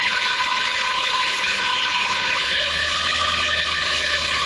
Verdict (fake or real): fake